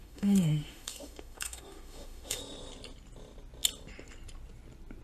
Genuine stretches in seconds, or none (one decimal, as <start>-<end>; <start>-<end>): 2.4-5.0